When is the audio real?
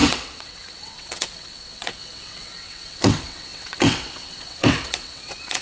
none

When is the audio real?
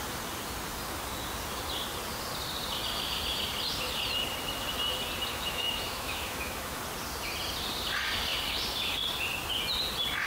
0.0-5.3; 6.8-10.3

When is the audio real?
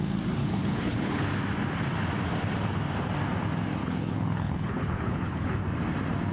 0.0-0.4; 1.3-3.8; 5.6-6.3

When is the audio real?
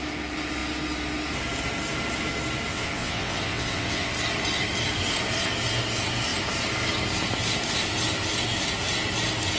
0.0-2.7; 4.1-9.6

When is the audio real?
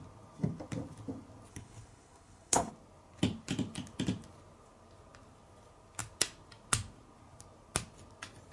0.0-1.5; 2.7-8.5